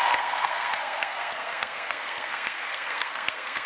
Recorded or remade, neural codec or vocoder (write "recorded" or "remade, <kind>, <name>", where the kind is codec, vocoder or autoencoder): remade, codec, SNAC